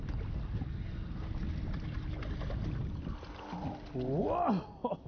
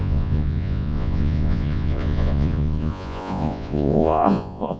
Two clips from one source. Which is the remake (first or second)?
second